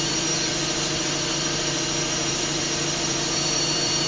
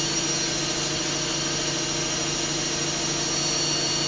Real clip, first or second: second